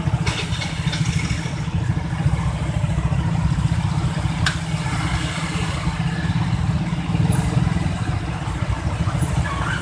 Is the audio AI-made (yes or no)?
no